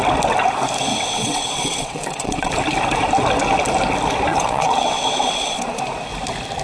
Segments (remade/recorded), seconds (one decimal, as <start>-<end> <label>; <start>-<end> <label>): 0.0-0.9 recorded; 0.9-2.5 remade; 2.5-4.3 recorded; 4.3-5.6 remade; 5.6-6.6 recorded